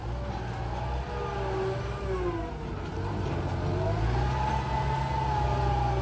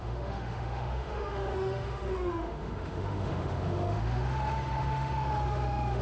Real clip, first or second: first